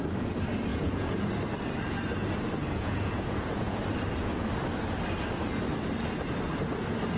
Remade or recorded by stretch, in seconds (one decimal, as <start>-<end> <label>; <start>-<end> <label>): 0.0-0.7 recorded; 0.7-1.3 remade; 1.3-2.6 recorded; 2.6-3.8 remade; 3.8-7.2 recorded